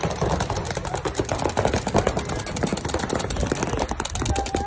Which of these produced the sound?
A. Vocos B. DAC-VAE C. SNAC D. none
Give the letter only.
D